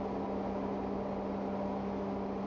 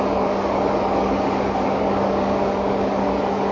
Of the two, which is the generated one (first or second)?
second